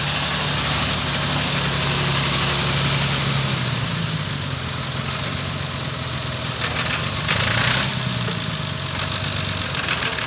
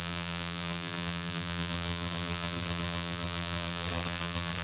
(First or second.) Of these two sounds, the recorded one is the first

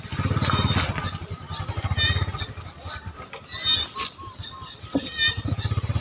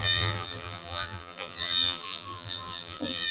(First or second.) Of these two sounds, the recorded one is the first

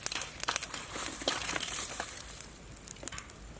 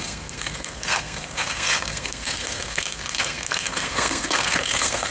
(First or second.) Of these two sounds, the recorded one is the first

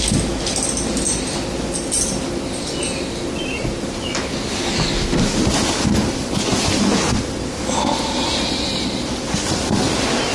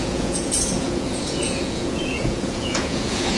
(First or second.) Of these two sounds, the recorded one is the first